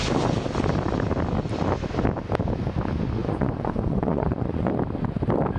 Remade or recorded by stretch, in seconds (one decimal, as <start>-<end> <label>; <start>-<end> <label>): 0.0-3.2 recorded; 3.2-4.7 remade; 4.7-5.6 recorded